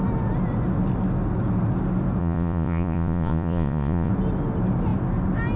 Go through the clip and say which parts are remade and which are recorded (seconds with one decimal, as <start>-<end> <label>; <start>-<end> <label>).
0.0-2.2 recorded; 2.2-4.1 remade; 4.1-5.6 recorded